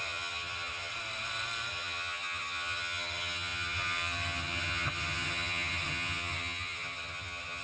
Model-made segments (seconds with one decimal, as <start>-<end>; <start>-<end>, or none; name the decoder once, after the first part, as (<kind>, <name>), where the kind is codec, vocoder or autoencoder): 0.0-0.9 (vocoder, HiFi-GAN); 1.7-7.6